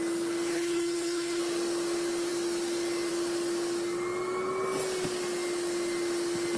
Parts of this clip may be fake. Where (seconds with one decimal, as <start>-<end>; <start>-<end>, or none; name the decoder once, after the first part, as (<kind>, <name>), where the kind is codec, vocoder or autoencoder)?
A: 0.5-1.4 (codec, SNAC)